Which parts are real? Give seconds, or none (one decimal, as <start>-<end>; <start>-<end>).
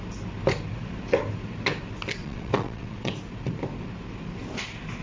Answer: 0.0-2.2; 3.1-5.0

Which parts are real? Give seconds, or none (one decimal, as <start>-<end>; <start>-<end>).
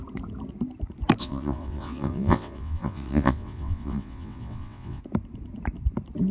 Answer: 0.0-1.2; 5.0-6.3